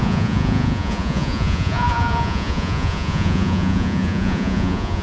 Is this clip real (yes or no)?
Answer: no